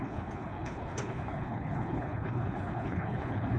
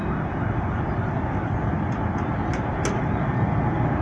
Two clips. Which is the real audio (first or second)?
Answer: second